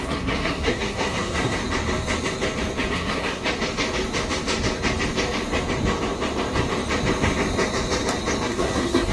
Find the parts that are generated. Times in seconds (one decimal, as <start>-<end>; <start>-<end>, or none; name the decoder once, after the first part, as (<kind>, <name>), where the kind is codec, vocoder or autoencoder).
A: 0.0-1.6 (codec, SNAC); 2.9-3.4; 8.4-9.1